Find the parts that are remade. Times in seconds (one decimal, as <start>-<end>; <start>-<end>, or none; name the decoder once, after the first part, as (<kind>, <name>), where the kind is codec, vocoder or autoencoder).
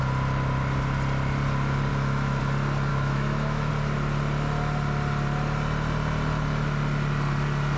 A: 1.9-2.4 (autoencoder, DAC-VAE); 2.9-3.7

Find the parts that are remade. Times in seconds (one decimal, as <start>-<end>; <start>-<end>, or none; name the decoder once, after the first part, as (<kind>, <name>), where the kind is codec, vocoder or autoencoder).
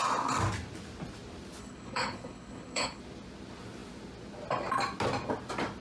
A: 1.6-3.0 (codec, HILCodec)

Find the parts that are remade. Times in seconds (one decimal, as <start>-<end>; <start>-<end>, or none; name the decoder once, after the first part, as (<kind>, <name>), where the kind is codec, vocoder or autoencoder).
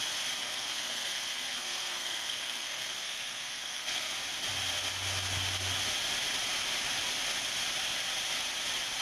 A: 0.4-4.1 (codec, SNAC)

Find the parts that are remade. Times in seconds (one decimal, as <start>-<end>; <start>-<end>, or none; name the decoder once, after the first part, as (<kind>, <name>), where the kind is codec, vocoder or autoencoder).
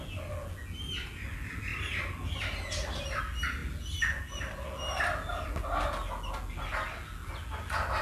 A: none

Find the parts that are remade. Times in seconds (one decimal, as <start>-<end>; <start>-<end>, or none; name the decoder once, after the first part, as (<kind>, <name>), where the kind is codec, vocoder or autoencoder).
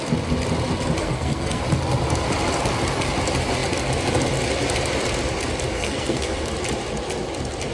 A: 1.0-1.6 (codec, SNAC); 5.7-6.5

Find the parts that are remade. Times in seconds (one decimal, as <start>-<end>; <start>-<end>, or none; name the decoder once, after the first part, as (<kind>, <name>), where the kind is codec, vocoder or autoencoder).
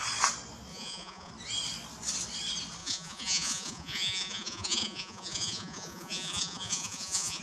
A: 0.7-1.3 (vocoder, Vocos); 2.8-7.4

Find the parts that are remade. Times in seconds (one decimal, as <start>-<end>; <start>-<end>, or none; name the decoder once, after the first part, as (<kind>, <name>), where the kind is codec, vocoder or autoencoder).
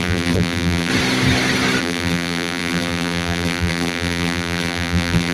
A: 0.0-0.9 (vocoder, BigVGAN v2); 1.8-5.3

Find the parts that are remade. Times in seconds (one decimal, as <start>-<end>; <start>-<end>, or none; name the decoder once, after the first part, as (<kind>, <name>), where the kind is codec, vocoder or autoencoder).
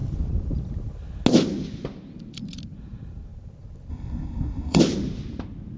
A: 3.9-4.8 (codec, SNAC)